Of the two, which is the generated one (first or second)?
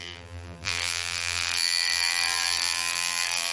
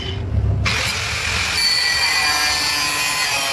first